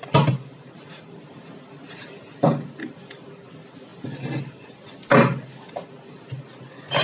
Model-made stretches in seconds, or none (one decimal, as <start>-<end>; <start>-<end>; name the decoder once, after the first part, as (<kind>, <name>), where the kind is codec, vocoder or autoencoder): none